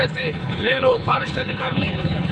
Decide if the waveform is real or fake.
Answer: fake